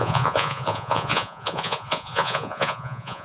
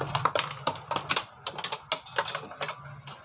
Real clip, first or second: second